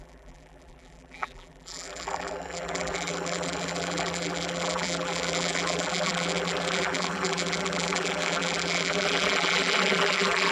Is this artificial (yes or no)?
yes